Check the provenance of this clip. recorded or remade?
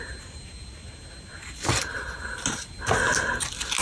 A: recorded